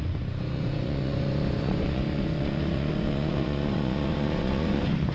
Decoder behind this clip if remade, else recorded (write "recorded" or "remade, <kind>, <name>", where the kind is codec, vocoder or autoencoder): remade, vocoder, Vocos